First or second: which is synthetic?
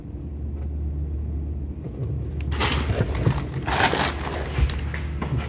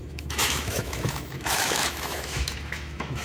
second